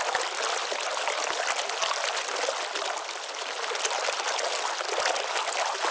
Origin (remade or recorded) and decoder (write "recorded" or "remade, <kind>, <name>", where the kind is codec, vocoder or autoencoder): recorded